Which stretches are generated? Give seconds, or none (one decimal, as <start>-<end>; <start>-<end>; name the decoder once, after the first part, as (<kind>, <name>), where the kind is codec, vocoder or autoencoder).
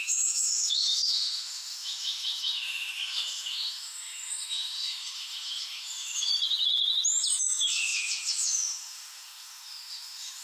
0.0-6.3 (autoencoder, DAC-VAE); 7.4-10.4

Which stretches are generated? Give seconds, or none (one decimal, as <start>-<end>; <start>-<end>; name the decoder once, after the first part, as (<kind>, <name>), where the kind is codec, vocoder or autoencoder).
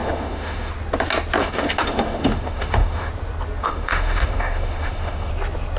0.0-0.7 (autoencoder, DAC-VAE); 1.4-3.1; 3.6-5.3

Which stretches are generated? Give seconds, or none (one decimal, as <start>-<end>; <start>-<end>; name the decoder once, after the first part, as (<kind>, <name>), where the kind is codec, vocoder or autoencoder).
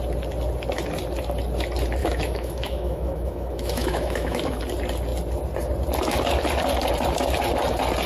2.0-4.6 (autoencoder, DAC-VAE)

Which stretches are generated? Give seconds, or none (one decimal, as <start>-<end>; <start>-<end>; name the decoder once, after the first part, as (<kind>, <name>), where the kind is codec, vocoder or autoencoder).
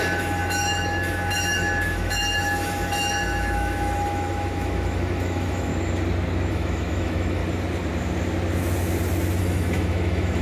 0.0-5.7 (autoencoder, DAC-VAE); 6.5-7.4; 9.4-10.4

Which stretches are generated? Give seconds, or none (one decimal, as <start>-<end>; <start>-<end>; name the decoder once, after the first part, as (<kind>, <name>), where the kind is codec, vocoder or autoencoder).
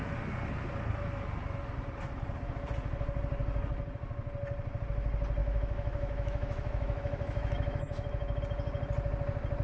5.4-8.4 (autoencoder, DAC-VAE)